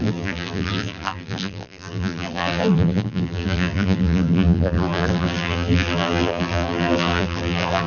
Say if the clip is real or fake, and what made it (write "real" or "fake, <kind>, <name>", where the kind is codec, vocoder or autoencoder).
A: fake, vocoder, BigVGAN v2